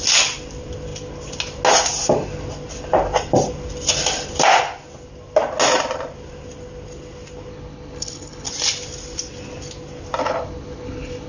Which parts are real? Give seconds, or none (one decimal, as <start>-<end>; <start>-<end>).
0.0-7.5; 8.5-10.2

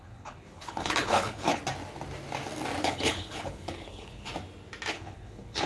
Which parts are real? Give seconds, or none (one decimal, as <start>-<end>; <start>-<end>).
1.6-2.8; 4.3-4.9

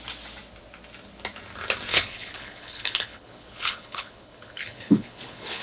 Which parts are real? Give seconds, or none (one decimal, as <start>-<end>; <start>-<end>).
0.0-1.9

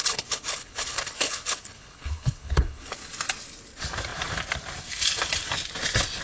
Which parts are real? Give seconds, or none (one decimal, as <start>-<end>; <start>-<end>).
2.9-6.2

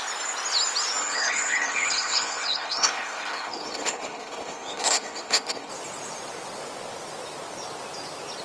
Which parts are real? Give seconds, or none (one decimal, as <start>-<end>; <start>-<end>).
0.0-1.0; 5.7-8.4